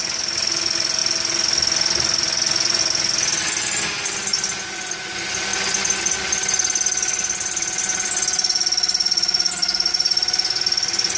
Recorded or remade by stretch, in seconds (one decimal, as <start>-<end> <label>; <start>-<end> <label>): 0.0-11.2 recorded